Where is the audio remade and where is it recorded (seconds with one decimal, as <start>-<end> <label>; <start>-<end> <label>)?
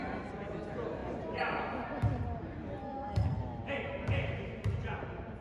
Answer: 0.0-2.8 recorded; 2.8-3.4 remade; 3.4-5.4 recorded